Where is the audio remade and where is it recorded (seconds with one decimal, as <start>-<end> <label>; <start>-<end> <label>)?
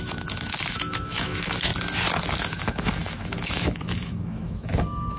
0.0-1.7 remade; 1.7-2.4 recorded; 2.4-5.2 remade